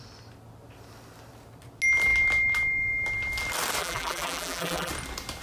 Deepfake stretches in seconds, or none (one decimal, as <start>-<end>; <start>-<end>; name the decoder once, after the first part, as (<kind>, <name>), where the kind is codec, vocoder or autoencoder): 3.8-4.9 (vocoder, BigVGAN v2)